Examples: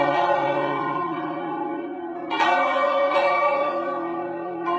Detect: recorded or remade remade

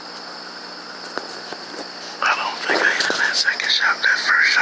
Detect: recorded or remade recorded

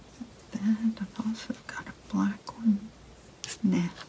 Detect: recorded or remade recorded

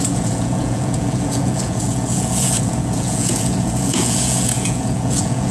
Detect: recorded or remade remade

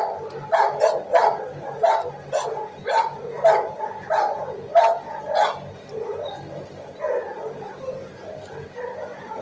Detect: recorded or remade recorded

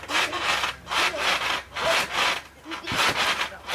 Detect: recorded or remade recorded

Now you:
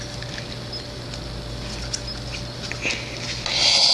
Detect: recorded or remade recorded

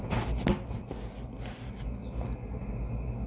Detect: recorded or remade recorded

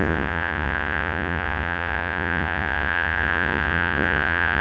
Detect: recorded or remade remade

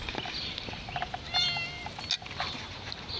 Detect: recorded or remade recorded